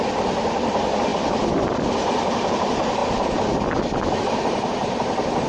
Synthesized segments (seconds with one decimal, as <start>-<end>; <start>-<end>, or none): 0.0-3.0; 4.2-5.5